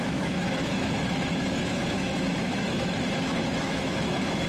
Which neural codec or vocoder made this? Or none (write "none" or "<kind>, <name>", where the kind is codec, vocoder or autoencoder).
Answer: autoencoder, DAC-VAE